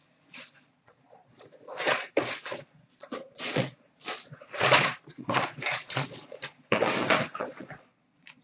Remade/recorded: remade